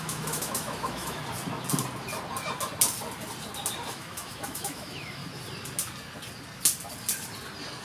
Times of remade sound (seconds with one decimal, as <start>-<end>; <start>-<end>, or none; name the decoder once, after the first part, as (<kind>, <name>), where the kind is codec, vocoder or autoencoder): 0.0-1.2 (autoencoder, DAC-VAE); 3.9-5.2